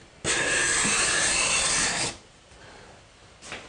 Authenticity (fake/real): real